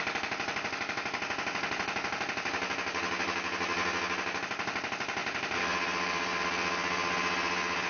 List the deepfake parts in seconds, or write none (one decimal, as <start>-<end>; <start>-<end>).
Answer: 5.2-6.4

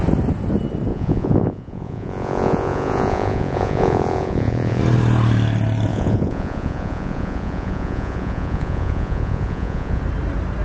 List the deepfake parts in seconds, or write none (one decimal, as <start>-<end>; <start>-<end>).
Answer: 0.9-4.8; 5.9-10.0

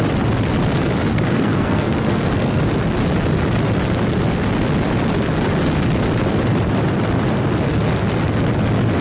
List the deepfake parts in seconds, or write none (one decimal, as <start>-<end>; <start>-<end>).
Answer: 1.1-2.6

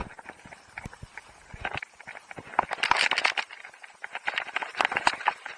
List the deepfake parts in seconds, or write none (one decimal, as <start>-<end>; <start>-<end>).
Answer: 3.4-5.6

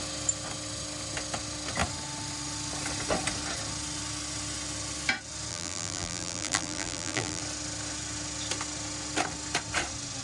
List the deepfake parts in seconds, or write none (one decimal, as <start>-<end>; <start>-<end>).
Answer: 5.5-7.4